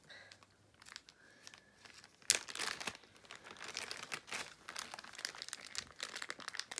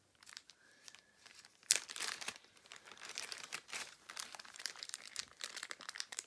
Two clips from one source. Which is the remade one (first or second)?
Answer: second